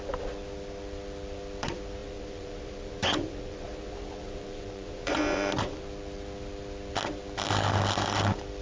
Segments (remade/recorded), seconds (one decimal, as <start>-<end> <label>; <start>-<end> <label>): 0.0-2.0 recorded; 2.0-5.8 remade; 5.8-8.6 recorded